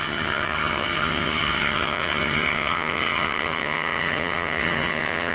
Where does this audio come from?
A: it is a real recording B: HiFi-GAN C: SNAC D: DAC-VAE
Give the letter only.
B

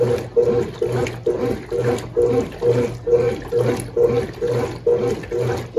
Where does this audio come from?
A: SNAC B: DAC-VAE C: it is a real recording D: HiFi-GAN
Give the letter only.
C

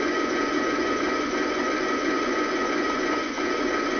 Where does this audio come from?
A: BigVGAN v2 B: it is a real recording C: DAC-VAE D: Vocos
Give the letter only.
D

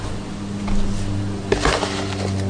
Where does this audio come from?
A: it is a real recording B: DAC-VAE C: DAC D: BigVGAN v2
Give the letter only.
A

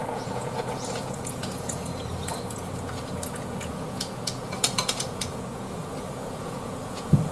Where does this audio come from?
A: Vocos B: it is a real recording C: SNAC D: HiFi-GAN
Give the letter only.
A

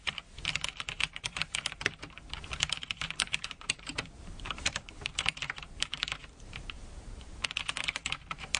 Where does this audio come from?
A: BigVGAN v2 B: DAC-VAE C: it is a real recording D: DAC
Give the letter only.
A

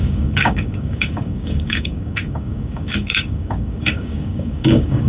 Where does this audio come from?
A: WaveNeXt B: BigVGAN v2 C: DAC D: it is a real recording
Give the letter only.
C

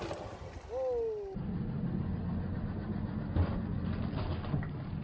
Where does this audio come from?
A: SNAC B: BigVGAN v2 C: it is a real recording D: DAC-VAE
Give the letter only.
C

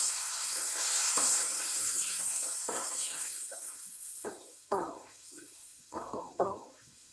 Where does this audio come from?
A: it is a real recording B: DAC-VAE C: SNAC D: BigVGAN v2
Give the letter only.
C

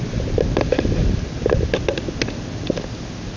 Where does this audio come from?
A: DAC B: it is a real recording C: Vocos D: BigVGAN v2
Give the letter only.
B